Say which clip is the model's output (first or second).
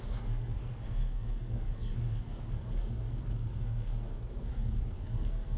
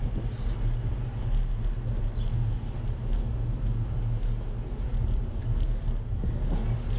first